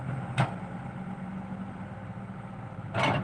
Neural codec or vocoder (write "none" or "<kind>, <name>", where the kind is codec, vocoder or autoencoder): none